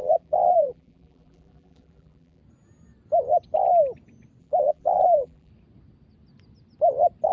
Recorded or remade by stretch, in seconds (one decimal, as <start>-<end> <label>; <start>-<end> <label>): 0.0-2.4 remade; 2.4-4.4 recorded; 4.4-5.5 remade; 5.5-7.3 recorded